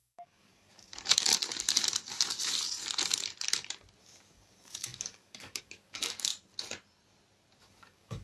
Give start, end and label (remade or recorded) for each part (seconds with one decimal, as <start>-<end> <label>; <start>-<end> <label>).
0.0-1.3 remade; 1.3-4.0 recorded; 4.0-6.3 remade; 6.3-7.6 recorded; 7.6-8.2 remade